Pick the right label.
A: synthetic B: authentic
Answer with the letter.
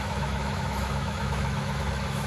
A